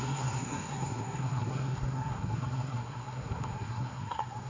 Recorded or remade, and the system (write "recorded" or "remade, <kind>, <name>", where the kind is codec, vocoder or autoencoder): remade, codec, SNAC